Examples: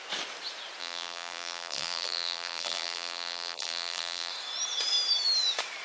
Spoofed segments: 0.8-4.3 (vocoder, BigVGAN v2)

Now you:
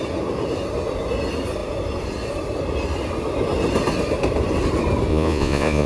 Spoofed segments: 5.1-5.9 (vocoder, Vocos)

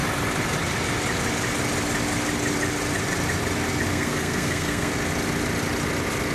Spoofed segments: 3.9-4.9 (codec, SNAC)

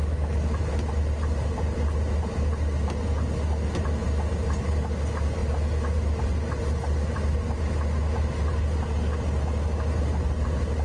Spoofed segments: none